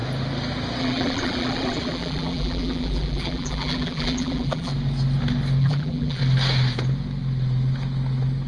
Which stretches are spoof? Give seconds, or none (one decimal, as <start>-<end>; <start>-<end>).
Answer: 0.8-4.7; 5.6-6.2